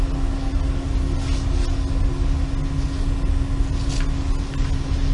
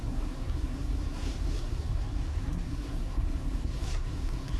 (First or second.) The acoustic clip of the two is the first